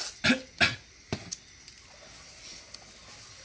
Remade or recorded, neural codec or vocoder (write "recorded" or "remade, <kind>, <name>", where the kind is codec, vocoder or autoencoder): recorded